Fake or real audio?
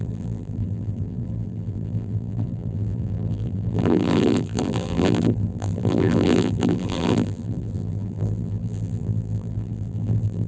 fake